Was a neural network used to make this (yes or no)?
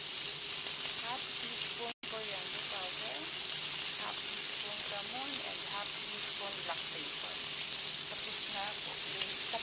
no